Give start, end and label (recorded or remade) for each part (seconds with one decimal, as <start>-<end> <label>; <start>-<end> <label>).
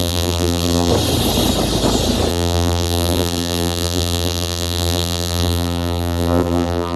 0.0-0.9 remade; 0.9-2.3 recorded; 2.3-7.0 remade